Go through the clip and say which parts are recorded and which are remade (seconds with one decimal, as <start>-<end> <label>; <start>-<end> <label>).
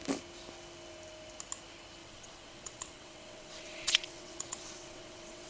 0.0-2.0 recorded; 2.0-5.5 remade